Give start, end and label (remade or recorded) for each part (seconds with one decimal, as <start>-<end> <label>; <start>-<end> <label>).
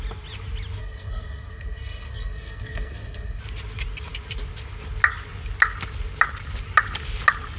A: 0.0-0.8 recorded; 0.8-3.4 remade; 3.4-7.6 recorded